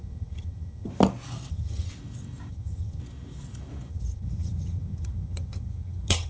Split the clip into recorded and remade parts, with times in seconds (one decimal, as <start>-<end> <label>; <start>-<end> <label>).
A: 0.0-0.9 remade; 0.9-1.5 recorded; 1.5-1.9 remade; 1.9-2.5 recorded; 2.5-3.0 remade; 3.0-3.9 recorded; 3.9-6.3 remade